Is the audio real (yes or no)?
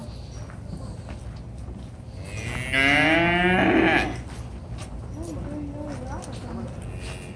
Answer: yes